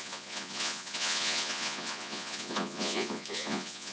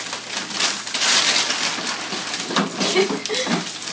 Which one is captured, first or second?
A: second